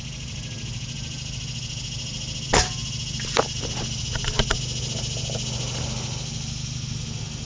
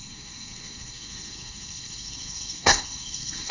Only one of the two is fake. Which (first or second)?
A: second